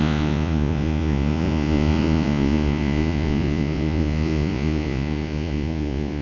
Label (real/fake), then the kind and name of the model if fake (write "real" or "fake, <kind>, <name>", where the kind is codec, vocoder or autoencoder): fake, vocoder, Vocos